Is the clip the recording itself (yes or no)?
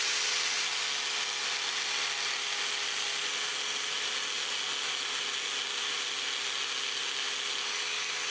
yes